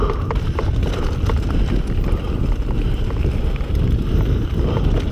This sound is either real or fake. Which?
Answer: real